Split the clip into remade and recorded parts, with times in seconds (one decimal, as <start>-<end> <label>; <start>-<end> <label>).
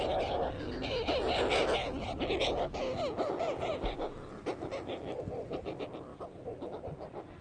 0.0-7.4 recorded